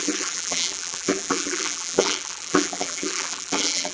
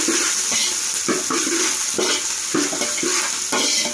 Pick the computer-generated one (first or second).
first